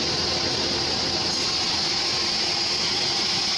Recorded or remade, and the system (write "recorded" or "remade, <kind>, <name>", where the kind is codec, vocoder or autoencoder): recorded